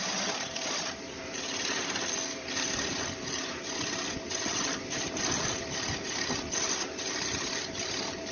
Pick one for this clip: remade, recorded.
recorded